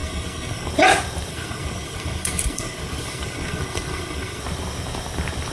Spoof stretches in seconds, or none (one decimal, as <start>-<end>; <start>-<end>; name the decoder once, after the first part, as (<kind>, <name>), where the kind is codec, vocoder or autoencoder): 0.0-0.7 (codec, SNAC); 1.3-4.4